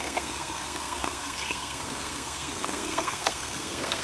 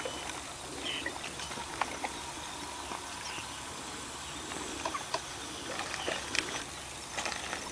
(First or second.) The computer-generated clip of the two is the first